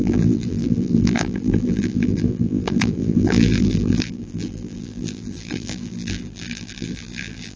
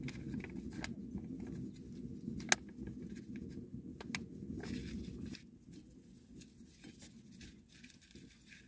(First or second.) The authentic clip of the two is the second